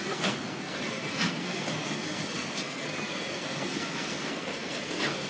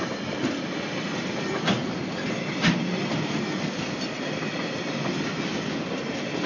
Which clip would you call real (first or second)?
second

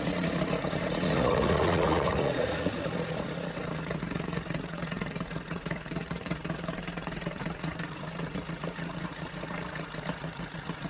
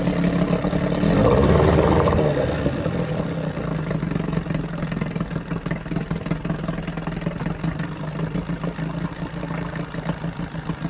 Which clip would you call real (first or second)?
second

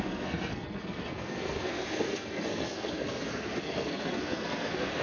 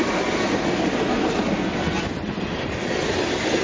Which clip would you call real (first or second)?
second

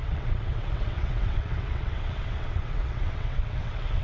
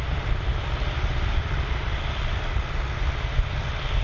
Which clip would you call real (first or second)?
second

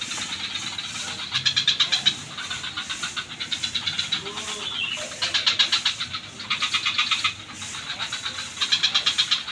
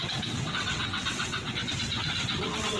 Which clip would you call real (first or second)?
first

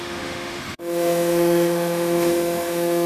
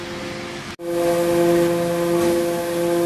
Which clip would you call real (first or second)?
second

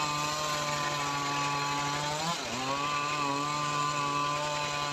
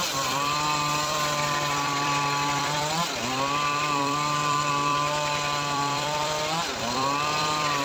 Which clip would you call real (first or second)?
first